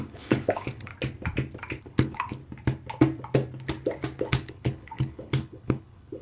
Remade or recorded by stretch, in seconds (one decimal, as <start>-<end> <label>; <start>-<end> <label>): 0.0-0.9 remade; 0.9-1.8 recorded; 1.8-2.4 remade; 2.4-4.3 recorded; 4.3-6.2 remade

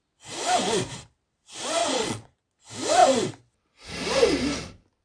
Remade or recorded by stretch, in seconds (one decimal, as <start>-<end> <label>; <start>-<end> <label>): 0.0-1.8 recorded; 1.8-2.6 remade; 2.6-5.0 recorded

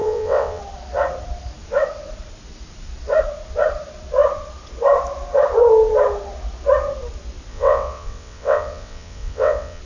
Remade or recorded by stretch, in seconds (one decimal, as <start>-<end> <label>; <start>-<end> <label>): 0.0-0.6 remade; 0.6-7.5 recorded; 7.5-9.8 remade